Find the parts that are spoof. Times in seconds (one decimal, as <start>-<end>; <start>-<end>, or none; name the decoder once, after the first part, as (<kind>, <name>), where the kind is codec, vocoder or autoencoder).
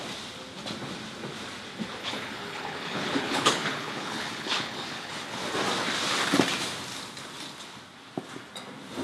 2.0-5.4 (codec, HILCodec)